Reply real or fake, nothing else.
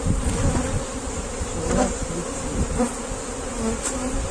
real